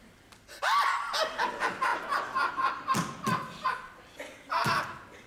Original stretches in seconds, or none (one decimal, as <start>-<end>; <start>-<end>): 0.0-5.3